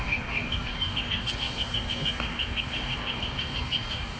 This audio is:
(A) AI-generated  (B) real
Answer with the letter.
A